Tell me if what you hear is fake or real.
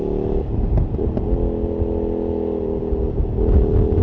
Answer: real